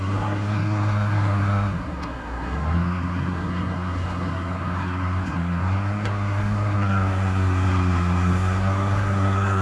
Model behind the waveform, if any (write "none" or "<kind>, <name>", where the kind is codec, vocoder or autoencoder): codec, SNAC